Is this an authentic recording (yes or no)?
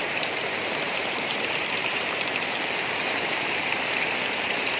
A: no